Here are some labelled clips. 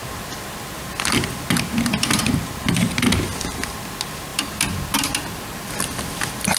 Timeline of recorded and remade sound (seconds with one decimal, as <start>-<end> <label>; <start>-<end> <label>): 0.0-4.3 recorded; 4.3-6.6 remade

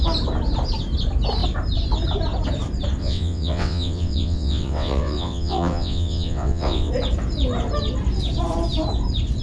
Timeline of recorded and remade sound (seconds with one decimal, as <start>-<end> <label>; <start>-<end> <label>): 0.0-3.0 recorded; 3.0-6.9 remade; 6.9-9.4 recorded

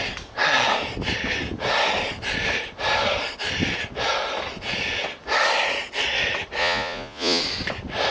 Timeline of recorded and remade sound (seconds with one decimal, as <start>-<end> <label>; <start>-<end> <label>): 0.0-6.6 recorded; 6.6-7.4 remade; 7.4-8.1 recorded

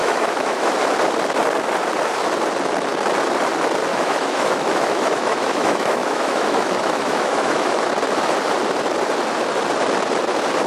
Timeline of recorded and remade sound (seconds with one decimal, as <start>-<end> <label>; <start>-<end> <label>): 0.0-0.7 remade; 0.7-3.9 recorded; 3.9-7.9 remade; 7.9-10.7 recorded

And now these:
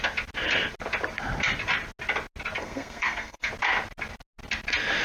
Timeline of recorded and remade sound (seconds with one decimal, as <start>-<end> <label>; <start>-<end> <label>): 0.0-2.6 recorded; 2.6-3.5 remade; 3.5-5.0 recorded